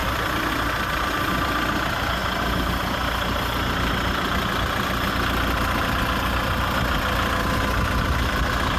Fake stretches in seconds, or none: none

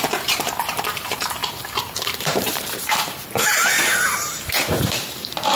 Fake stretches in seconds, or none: 0.0-5.6 (vocoder, BigVGAN v2)

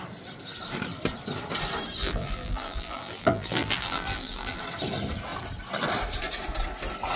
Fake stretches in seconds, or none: 2.0-4.6 (vocoder, BigVGAN v2)

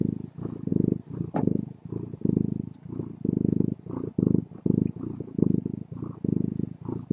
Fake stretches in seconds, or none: none